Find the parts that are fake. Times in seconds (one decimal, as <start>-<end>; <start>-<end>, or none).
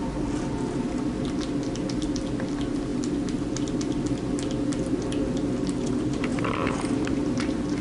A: 6.3-7.8